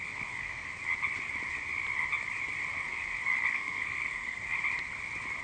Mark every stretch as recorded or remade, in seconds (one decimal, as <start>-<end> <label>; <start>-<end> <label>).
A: 0.0-0.7 remade; 0.7-3.5 recorded; 3.5-4.4 remade; 4.4-5.4 recorded